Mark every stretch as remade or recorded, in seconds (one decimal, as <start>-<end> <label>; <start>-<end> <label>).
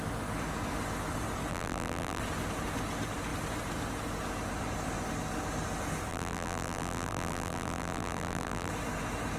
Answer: 0.0-1.5 recorded; 1.5-2.2 remade; 2.2-6.1 recorded; 6.1-8.7 remade; 8.7-9.4 recorded